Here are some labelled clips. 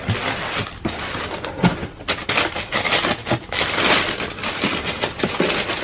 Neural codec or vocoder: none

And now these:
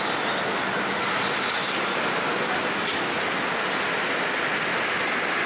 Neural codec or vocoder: none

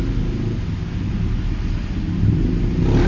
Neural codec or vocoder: none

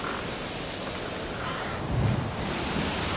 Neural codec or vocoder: none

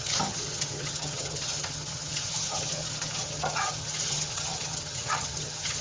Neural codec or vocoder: vocoder, HiFi-GAN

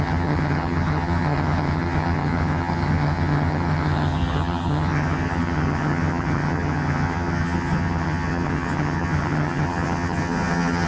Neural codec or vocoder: vocoder, HiFi-GAN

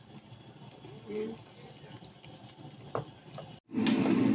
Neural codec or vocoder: none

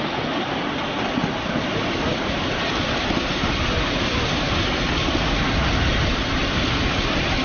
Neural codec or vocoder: none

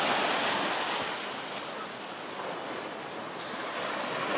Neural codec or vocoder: none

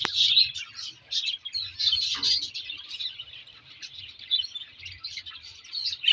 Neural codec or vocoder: none